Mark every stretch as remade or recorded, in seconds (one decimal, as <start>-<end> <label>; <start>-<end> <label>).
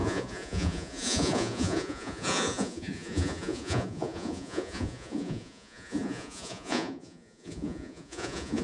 0.0-8.6 remade